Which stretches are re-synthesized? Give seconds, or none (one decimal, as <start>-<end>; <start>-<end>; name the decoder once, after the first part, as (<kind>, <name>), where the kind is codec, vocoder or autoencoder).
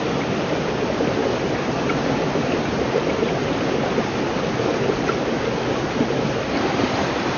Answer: 0.0-1.2 (vocoder, BigVGAN v2); 1.8-3.8